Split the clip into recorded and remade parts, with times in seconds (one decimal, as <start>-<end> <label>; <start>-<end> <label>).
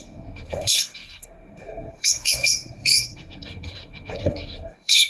0.0-5.1 remade